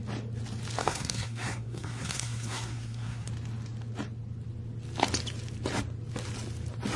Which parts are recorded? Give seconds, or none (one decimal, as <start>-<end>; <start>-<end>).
0.0-0.8; 3.3-7.0